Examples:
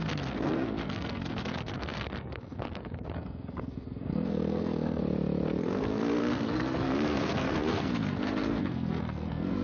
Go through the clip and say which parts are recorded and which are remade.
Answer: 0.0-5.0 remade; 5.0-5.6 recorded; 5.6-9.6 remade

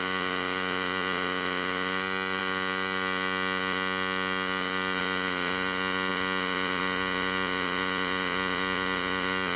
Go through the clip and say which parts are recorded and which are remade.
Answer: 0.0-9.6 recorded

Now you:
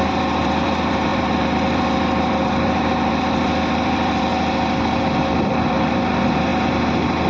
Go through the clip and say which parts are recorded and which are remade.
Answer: 0.0-4.3 remade; 4.3-5.2 recorded; 5.2-6.5 remade; 6.5-7.3 recorded

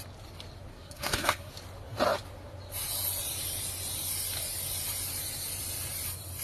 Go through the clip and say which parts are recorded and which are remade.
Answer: 0.0-0.7 recorded; 0.7-1.5 remade; 1.5-6.4 recorded

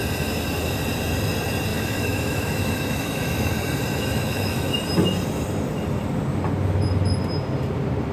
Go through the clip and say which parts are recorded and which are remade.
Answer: 0.0-1.7 recorded; 1.7-3.5 remade; 3.5-3.9 recorded; 3.9-4.7 remade; 4.7-8.1 recorded

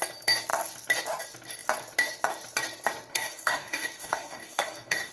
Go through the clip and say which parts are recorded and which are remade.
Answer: 0.0-3.1 recorded; 3.1-5.1 remade

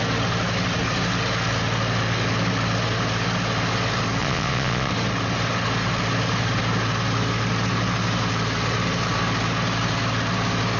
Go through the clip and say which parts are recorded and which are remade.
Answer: 0.0-4.2 recorded; 4.2-4.9 remade; 4.9-10.8 recorded